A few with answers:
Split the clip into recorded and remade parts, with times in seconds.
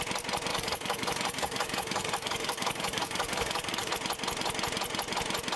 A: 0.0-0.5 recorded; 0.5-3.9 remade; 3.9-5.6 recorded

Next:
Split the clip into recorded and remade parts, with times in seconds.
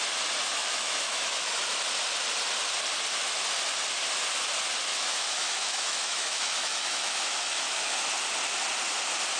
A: 0.0-0.6 recorded; 0.6-1.5 remade; 1.5-4.9 recorded; 4.9-7.9 remade; 7.9-9.4 recorded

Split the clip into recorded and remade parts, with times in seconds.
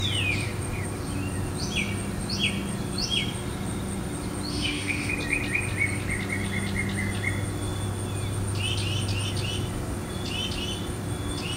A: 0.0-4.5 recorded; 4.5-5.1 remade; 5.1-11.6 recorded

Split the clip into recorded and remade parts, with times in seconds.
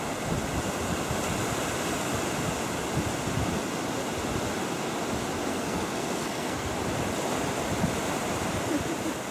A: 0.0-5.5 recorded; 5.5-6.7 remade; 6.7-9.3 recorded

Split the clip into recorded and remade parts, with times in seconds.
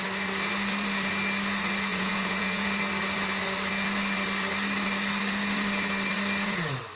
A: 0.0-1.9 recorded; 1.9-2.7 remade; 2.7-7.0 recorded